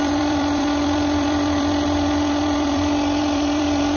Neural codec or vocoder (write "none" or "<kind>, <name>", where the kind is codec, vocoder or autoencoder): vocoder, BigVGAN v2